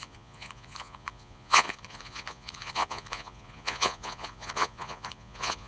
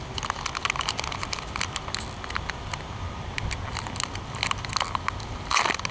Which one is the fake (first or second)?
first